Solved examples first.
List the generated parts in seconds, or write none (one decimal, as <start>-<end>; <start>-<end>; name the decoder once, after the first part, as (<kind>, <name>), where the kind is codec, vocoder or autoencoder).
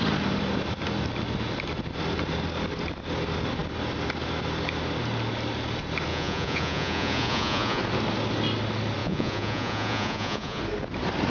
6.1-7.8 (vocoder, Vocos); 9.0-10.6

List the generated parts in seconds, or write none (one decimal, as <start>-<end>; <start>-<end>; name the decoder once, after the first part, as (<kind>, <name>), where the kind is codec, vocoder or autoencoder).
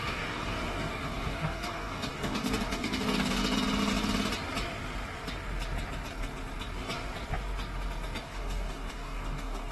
0.0-3.4 (codec, DAC); 8.2-9.7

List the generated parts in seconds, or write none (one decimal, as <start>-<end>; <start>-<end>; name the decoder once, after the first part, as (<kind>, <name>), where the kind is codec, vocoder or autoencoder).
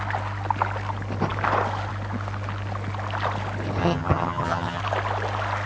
3.8-4.8 (vocoder, HiFi-GAN)